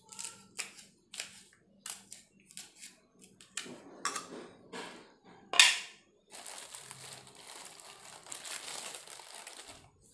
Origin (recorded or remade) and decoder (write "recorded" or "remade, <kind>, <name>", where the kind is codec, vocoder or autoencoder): recorded